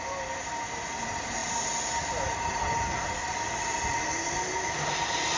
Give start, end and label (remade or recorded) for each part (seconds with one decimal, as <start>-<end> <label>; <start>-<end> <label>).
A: 0.0-5.4 recorded